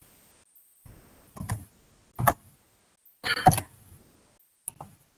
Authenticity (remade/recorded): recorded